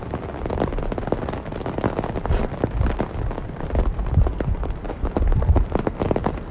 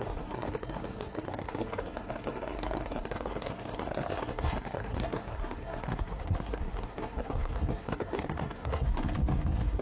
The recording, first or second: first